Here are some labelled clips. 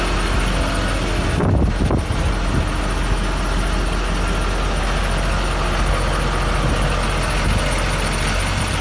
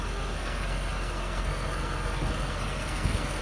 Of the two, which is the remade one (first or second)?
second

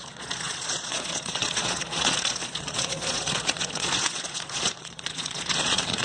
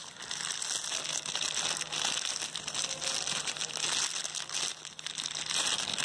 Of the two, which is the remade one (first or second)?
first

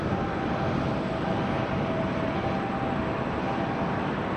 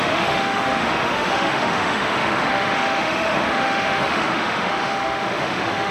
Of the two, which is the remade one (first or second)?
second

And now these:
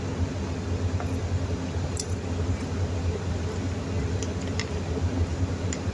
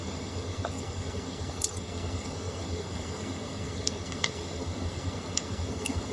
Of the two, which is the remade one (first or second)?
second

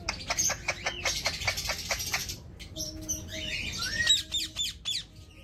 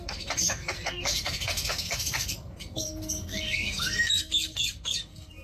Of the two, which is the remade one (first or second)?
second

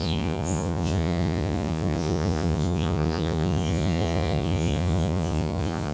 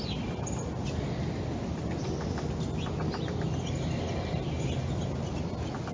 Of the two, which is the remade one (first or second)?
first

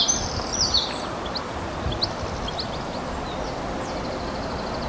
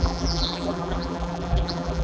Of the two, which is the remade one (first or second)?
second